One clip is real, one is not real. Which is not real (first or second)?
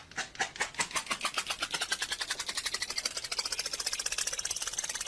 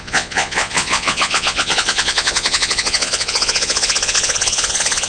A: second